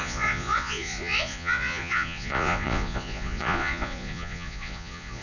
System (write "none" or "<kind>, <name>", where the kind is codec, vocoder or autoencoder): vocoder, Vocos